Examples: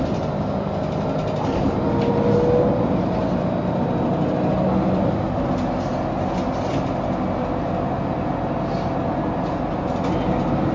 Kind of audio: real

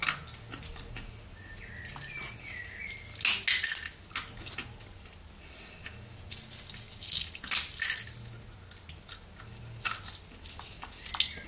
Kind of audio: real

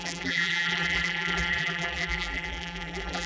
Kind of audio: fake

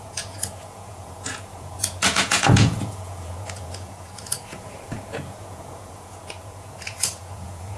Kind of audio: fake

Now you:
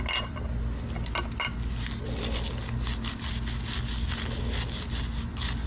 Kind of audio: real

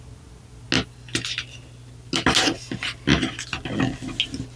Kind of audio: real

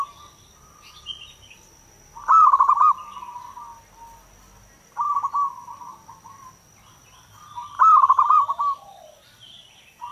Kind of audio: real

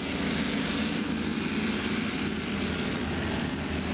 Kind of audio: real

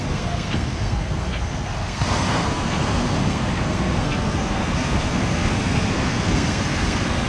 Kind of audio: fake